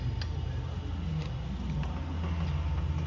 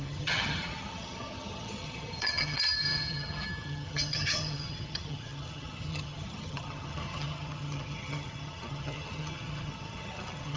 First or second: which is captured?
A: first